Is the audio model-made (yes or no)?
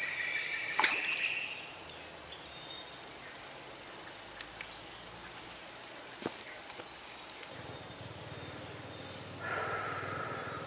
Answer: no